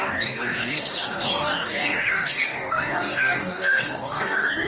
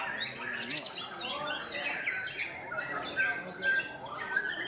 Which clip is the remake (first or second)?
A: first